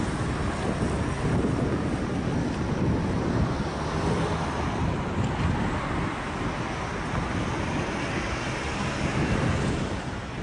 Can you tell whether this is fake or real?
real